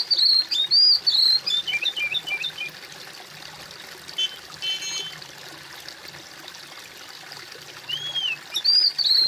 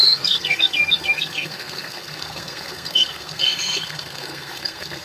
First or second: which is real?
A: first